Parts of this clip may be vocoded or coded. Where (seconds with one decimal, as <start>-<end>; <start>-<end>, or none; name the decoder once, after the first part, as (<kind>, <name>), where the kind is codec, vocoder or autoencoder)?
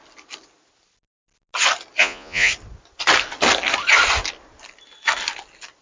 2.0-2.5 (vocoder, Vocos)